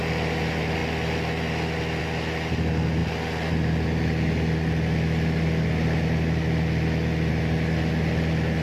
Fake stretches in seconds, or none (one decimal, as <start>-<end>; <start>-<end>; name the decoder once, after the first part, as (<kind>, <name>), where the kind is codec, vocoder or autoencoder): none